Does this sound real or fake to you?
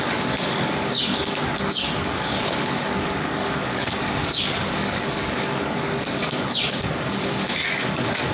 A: fake